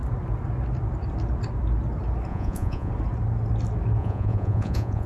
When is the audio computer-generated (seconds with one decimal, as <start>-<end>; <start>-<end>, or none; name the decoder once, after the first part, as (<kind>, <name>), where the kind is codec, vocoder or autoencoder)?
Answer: 2.3-2.9 (vocoder, Vocos); 4.0-5.1